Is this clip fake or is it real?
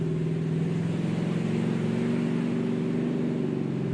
real